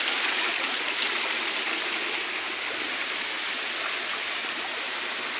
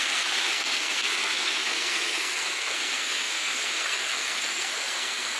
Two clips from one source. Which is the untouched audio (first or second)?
first